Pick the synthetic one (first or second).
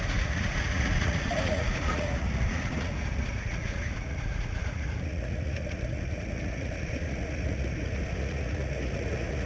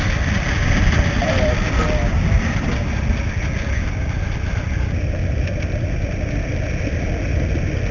first